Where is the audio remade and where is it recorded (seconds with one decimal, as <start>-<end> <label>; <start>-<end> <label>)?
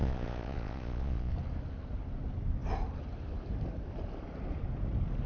0.0-1.3 remade; 1.3-5.3 recorded